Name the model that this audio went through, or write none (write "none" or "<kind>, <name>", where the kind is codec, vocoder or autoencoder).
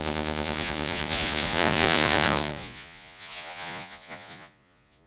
vocoder, Vocos